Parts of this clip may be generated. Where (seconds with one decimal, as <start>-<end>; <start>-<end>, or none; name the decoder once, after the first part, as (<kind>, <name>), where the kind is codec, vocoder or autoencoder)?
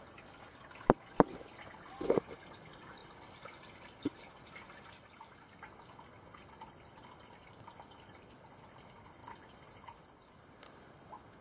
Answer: none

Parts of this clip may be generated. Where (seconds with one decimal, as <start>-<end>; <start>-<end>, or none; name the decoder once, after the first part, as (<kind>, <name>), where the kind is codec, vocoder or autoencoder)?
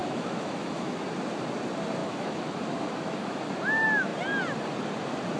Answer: 0.0-1.0 (autoencoder, DAC-VAE); 2.0-3.4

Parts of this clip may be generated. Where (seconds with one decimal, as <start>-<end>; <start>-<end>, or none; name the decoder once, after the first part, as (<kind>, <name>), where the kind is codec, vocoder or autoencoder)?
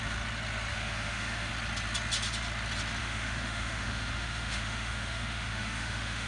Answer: 0.7-1.5 (autoencoder, DAC-VAE); 3.0-6.3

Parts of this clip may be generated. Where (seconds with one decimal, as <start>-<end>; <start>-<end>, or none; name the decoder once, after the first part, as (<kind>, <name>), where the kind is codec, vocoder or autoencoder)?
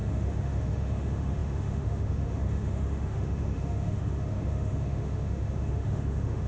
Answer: 0.0-6.5 (autoencoder, DAC-VAE)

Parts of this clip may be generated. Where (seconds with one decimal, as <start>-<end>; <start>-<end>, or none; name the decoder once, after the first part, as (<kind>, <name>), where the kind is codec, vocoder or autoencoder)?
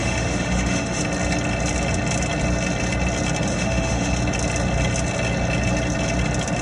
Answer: 0.0-1.0 (autoencoder, DAC-VAE); 3.5-4.1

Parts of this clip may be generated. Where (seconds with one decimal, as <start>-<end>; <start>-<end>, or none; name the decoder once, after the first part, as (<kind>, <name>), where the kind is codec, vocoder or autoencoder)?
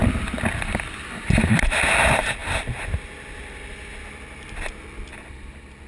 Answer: none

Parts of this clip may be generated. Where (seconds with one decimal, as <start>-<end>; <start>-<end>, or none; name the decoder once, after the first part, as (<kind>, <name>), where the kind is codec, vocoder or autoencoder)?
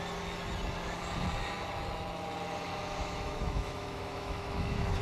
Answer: 3.0-5.0 (autoencoder, DAC-VAE)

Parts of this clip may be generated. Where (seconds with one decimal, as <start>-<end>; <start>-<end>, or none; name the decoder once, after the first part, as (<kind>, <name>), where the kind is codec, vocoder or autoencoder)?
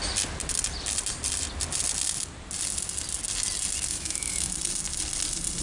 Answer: 3.9-4.5 (autoencoder, DAC-VAE)